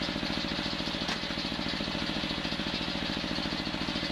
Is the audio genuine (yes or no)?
yes